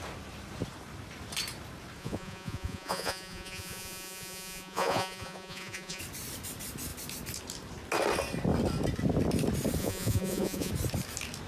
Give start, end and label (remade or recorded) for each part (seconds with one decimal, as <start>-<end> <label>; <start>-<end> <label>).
0.0-2.0 recorded; 2.0-6.0 remade; 6.0-9.8 recorded; 9.8-10.7 remade; 10.7-11.5 recorded